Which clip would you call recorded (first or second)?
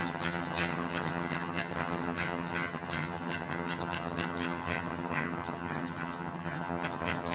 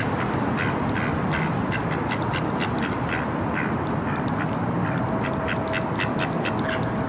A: second